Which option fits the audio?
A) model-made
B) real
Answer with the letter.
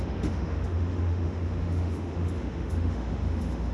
A